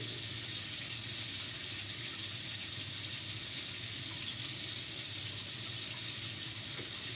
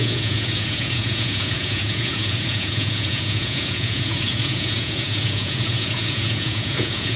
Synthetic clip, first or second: second